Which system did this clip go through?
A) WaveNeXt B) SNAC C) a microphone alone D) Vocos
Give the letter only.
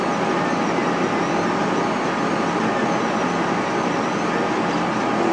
C